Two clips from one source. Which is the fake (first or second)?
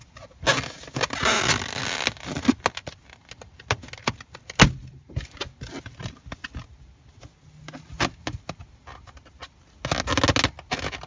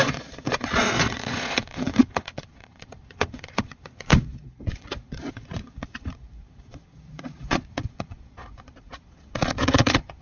second